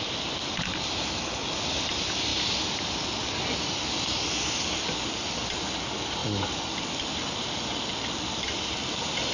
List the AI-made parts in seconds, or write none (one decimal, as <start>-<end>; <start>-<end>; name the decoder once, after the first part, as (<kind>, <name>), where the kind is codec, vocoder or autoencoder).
none